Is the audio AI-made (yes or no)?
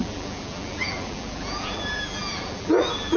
yes